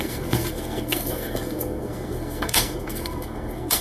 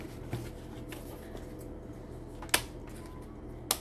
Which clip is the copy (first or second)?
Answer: first